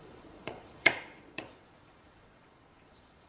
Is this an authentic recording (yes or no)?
no